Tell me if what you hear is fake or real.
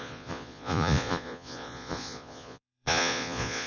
fake